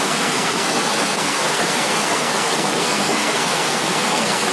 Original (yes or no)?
no